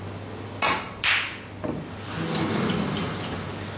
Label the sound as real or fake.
real